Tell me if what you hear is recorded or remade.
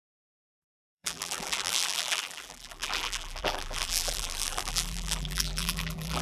remade